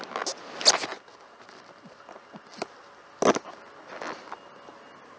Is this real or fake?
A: real